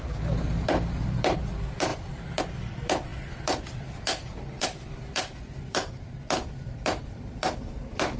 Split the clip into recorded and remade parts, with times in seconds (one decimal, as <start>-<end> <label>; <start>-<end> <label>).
0.0-8.2 remade